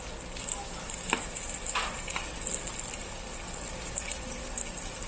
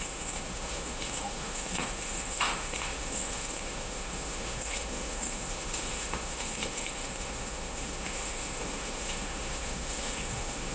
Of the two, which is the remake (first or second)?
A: second